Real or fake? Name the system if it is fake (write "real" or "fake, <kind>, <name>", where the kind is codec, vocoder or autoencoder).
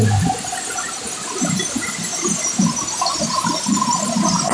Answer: real